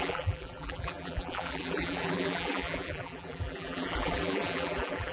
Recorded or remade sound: remade